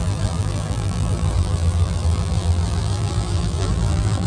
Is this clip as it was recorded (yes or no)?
no